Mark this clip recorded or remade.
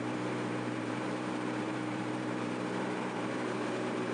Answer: remade